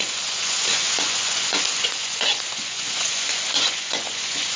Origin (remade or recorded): remade